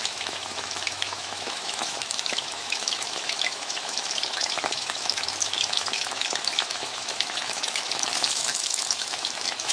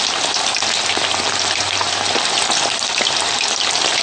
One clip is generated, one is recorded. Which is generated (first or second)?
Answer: first